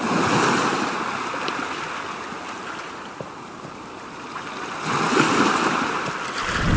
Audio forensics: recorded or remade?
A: recorded